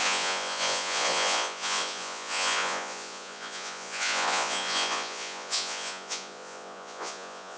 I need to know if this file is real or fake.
fake